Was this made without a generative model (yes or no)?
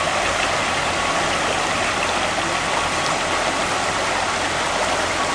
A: yes